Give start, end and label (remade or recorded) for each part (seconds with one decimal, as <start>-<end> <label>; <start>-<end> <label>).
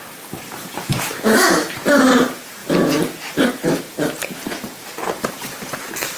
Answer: 0.0-2.6 remade; 2.6-3.4 recorded; 3.4-6.2 remade